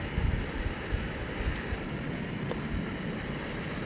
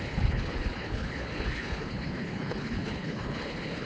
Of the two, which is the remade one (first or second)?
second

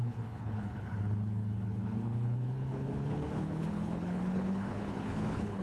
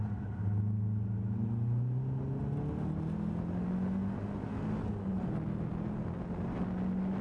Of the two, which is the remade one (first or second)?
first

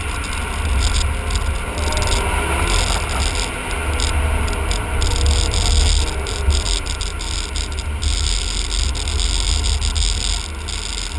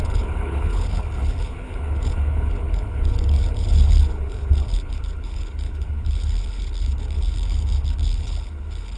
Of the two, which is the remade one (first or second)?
second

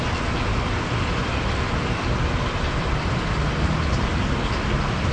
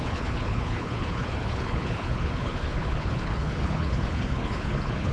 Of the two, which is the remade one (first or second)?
second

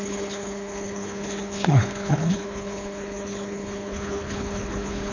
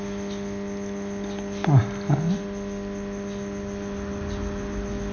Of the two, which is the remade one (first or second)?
first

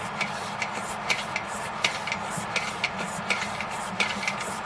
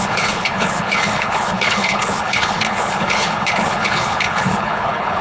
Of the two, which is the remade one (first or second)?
second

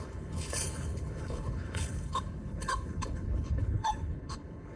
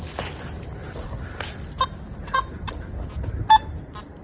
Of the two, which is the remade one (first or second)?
first